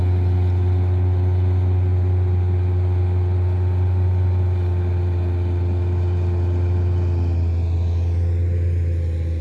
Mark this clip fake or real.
real